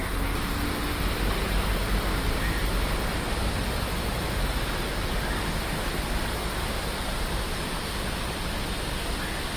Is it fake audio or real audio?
real